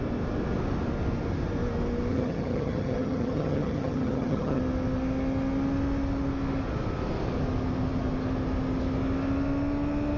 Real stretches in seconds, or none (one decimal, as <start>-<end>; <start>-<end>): 0.0-2.1; 4.6-10.2